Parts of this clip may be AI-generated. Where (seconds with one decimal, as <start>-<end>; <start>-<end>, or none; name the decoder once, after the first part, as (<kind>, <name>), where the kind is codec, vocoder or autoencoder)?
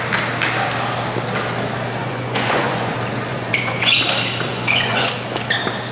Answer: 2.0-2.9 (vocoder, Vocos); 3.3-4.0; 4.5-5.1